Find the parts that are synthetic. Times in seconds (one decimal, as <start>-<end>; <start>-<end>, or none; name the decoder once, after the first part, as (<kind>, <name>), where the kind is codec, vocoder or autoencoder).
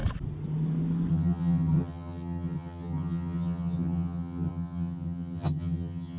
1.1-6.2 (vocoder, HiFi-GAN)